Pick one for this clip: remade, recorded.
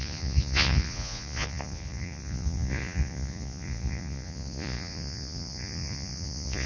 remade